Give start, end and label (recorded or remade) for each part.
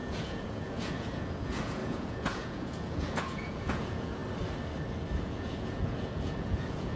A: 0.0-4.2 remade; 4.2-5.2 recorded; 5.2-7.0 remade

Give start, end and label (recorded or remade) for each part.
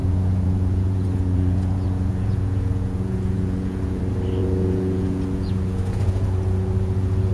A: 0.0-4.0 remade; 4.0-4.4 recorded; 4.4-7.3 remade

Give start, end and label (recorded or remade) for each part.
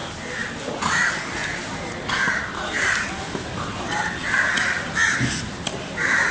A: 0.0-6.3 recorded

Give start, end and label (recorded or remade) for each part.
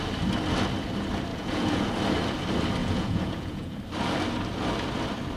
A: 0.0-1.3 recorded; 1.3-1.9 remade; 1.9-2.8 recorded; 2.8-3.8 remade; 3.8-5.4 recorded